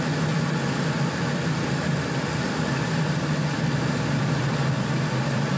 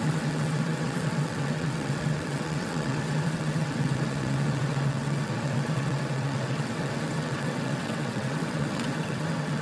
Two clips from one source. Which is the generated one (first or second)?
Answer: second